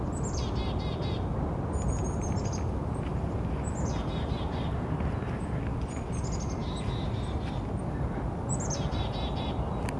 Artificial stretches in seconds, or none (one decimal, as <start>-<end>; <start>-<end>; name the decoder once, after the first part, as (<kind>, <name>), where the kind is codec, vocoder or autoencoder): none